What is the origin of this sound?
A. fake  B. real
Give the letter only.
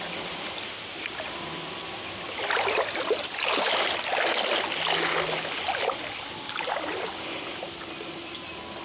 B